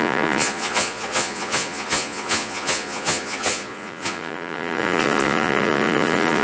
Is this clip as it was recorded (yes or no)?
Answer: no